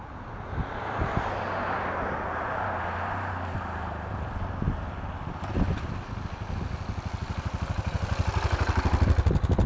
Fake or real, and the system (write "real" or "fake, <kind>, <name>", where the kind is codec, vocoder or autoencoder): real